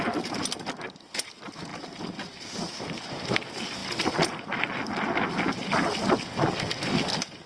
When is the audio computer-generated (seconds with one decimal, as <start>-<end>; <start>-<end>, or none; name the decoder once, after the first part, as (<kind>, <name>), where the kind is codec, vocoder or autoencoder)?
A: none